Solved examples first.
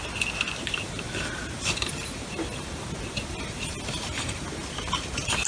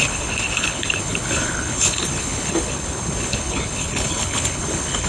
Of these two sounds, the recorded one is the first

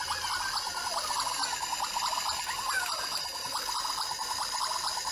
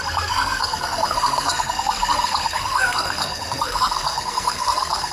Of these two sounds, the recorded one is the first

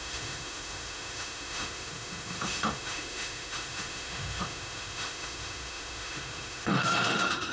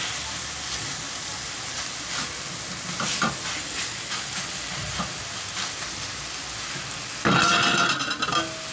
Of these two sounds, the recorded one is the second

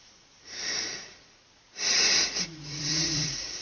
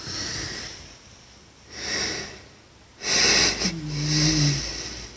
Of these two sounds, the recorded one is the second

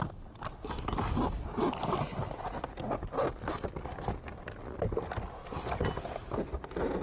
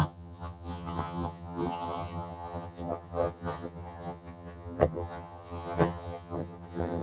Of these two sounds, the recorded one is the first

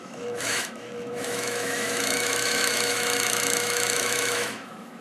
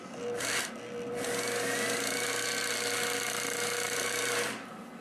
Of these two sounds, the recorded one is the second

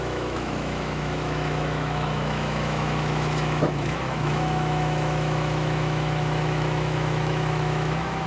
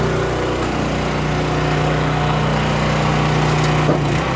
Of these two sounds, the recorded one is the second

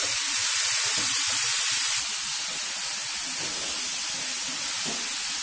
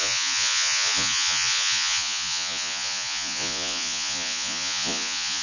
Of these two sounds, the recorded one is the first